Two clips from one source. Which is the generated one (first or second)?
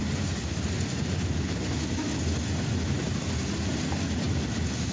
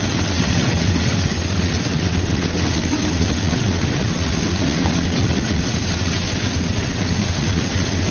second